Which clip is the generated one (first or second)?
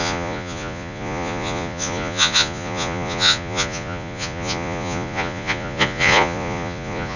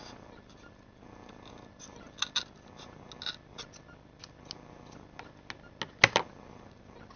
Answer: first